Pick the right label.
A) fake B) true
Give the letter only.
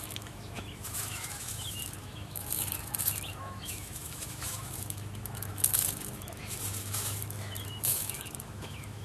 A